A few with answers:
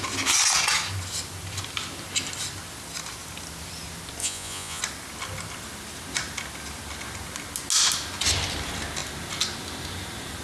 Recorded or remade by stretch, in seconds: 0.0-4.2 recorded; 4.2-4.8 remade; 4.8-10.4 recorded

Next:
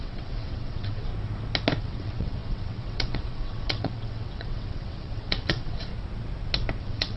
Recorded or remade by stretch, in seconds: 0.0-1.1 remade; 1.1-1.8 recorded; 1.8-5.9 remade; 5.9-6.8 recorded; 6.8-7.2 remade

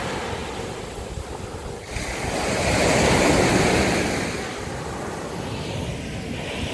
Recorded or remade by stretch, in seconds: 0.0-6.7 recorded